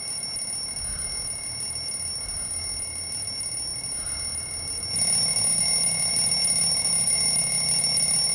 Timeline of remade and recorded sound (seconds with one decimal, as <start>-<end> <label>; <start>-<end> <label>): 0.0-8.3 recorded